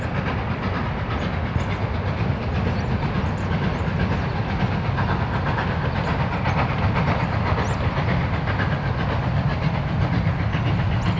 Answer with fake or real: real